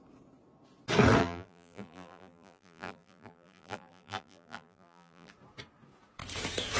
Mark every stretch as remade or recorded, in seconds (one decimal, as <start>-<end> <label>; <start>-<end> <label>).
0.0-1.2 recorded; 1.2-5.3 remade; 5.3-6.8 recorded